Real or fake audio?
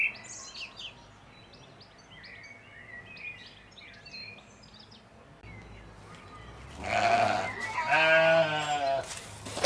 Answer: real